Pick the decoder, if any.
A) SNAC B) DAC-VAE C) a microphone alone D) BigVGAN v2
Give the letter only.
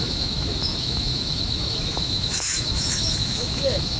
B